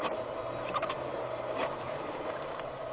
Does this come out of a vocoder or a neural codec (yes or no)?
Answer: yes